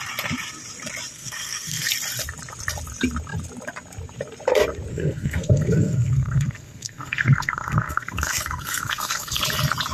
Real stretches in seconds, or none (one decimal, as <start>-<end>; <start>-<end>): 0.0-1.1; 1.9-4.9; 9.4-9.9